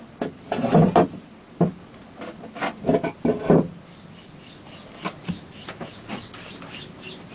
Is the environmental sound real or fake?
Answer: real